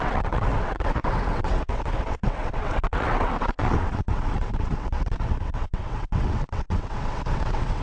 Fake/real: fake